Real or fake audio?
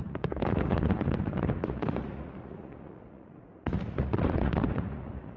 fake